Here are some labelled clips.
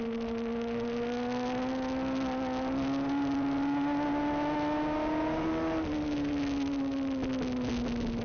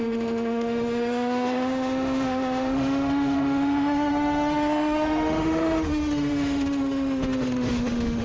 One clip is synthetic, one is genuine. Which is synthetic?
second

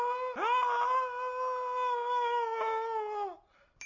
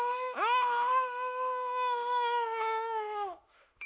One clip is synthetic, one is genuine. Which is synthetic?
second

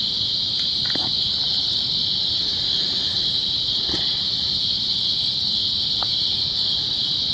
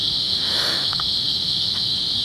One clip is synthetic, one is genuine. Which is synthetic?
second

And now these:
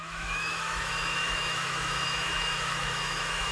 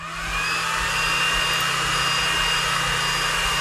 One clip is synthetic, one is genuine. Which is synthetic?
first